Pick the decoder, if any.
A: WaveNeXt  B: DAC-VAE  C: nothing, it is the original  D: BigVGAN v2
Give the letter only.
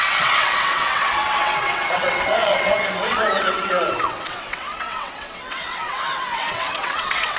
A